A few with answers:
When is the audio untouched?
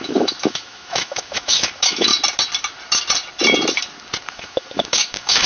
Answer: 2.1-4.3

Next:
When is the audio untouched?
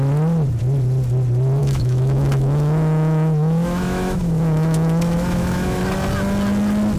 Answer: 0.0-1.6; 5.8-7.0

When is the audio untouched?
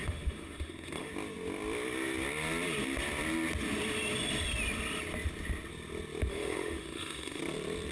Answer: 1.1-6.3; 7.4-7.9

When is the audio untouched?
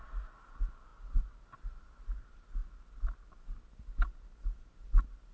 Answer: 0.0-5.3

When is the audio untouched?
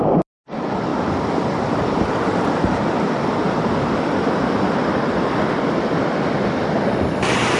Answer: 0.0-7.6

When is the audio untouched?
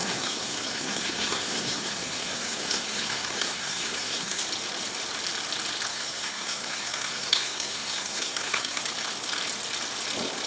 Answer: 4.4-5.9; 8.8-10.5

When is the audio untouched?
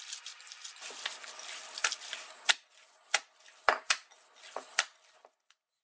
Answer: 0.0-5.8